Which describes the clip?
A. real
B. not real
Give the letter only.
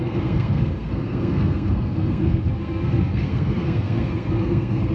B